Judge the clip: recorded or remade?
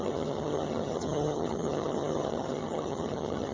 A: remade